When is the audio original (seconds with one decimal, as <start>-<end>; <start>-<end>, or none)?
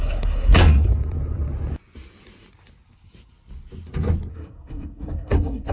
0.9-4.3